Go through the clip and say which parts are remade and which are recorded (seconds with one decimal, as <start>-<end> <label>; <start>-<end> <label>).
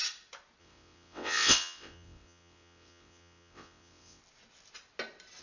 0.0-0.6 recorded; 0.6-4.2 remade; 4.2-5.4 recorded